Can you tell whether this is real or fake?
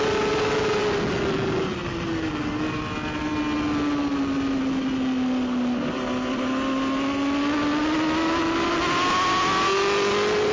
real